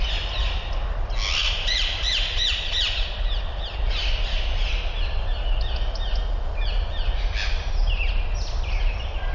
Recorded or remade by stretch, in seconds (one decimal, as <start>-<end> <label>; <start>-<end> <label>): 0.0-1.4 recorded; 1.4-3.4 remade; 3.4-9.3 recorded